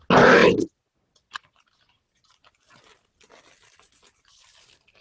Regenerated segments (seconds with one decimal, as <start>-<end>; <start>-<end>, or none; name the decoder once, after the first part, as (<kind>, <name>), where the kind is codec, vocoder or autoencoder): none